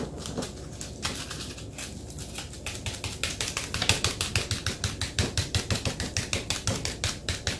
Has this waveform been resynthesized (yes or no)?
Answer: no